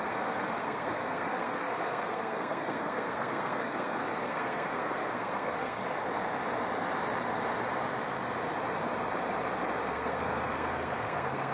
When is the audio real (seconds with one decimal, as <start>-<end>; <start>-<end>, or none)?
5.8-9.9